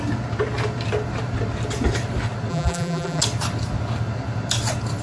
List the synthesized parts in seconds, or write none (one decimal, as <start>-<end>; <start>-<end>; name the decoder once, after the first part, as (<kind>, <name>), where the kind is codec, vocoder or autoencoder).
2.5-3.2 (vocoder, BigVGAN v2)